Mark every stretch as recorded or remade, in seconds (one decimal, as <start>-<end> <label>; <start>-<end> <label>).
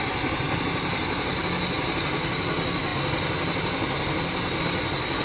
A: 0.0-5.2 recorded